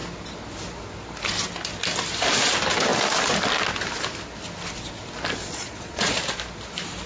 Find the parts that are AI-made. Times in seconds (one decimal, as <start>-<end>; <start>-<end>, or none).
5.4-6.2